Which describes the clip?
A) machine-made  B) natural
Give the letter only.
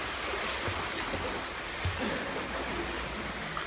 B